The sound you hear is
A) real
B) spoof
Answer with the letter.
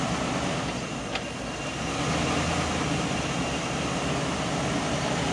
A